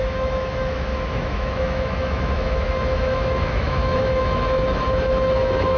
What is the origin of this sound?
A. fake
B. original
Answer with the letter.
A